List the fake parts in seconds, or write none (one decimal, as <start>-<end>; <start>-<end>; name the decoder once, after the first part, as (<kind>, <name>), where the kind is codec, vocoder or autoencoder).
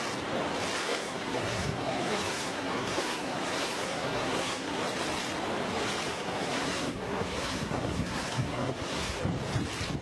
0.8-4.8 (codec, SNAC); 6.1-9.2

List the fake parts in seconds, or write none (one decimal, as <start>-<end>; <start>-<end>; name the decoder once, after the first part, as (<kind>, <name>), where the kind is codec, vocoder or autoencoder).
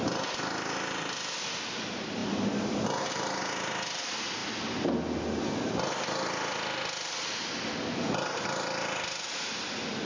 none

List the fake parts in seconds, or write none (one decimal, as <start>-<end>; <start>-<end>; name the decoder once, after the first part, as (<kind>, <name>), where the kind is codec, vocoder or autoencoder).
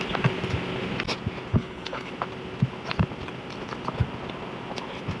1.5-2.1 (codec, HILCodec)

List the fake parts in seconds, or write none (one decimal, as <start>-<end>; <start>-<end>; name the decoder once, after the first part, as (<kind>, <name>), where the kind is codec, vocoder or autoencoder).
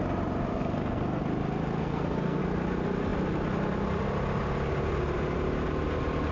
0.5-1.2 (codec, SNAC); 1.8-2.4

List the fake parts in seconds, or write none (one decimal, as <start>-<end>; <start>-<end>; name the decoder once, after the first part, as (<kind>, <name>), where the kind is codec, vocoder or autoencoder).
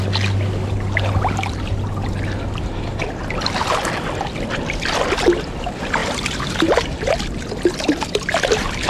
none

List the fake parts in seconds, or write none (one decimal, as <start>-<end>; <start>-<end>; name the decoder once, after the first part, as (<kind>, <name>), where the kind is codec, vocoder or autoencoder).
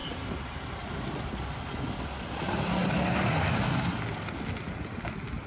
none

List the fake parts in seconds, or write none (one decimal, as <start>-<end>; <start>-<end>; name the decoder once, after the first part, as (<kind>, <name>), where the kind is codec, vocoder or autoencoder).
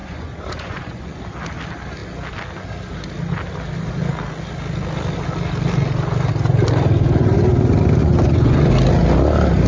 0.0-1.2 (vocoder, Vocos); 8.0-8.7